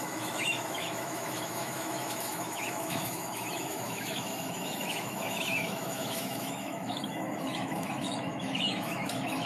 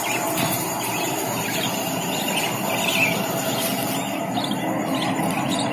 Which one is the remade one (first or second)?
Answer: first